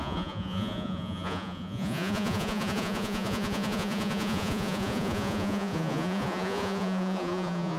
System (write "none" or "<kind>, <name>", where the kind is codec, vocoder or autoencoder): vocoder, Vocos